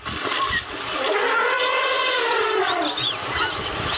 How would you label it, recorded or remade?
recorded